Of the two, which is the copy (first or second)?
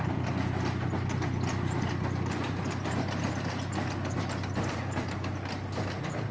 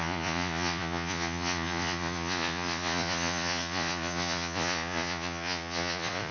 second